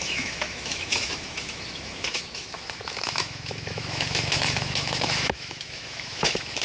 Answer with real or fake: fake